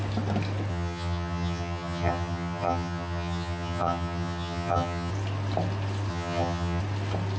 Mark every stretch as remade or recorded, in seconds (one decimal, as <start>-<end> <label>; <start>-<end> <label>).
0.0-0.7 recorded; 0.7-5.1 remade; 5.1-6.1 recorded; 6.1-6.8 remade; 6.8-7.4 recorded